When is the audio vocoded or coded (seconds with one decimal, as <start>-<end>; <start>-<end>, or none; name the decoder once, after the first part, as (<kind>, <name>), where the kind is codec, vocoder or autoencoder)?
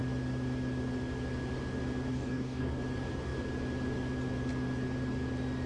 2.1-2.8 (codec, DAC)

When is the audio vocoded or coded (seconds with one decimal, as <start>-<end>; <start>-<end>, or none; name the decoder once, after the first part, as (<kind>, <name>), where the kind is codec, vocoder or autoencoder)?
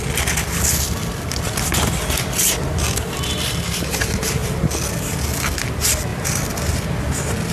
1.0-4.0 (vocoder, BigVGAN v2); 6.1-6.7